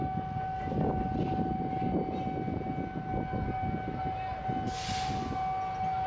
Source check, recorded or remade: recorded